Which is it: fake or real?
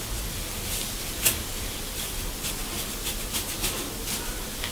real